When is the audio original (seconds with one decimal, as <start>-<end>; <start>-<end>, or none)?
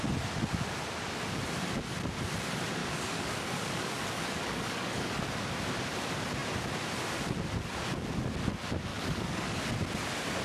0.0-2.8; 5.2-8.9; 9.6-10.4